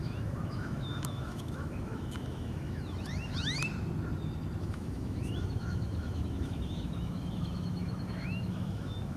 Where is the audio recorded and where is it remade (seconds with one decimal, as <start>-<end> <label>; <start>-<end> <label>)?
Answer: 0.0-3.6 remade; 3.6-4.6 recorded; 4.6-9.2 remade